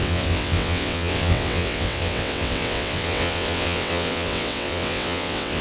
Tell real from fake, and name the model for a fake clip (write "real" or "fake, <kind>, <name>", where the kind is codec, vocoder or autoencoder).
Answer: fake, vocoder, WaveNeXt